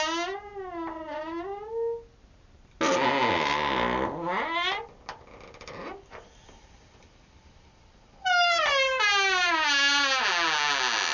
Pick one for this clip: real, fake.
real